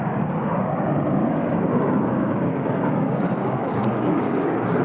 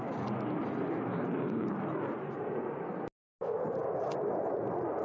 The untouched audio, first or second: second